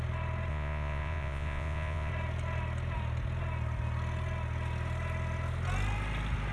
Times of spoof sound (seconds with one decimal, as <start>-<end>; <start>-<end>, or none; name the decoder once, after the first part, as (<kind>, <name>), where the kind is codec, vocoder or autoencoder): 0.5-2.1 (vocoder, Vocos)